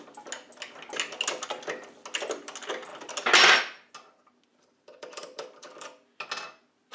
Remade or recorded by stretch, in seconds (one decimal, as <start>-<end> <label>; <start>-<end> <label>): 0.0-4.5 recorded; 4.5-6.2 remade; 6.2-6.9 recorded